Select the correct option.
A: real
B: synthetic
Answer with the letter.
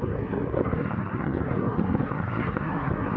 B